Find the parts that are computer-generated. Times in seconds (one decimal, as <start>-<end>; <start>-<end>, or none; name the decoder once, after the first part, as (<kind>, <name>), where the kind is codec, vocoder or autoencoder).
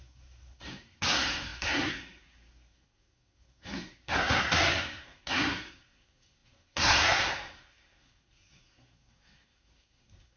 0.0-10.4 (codec, SNAC)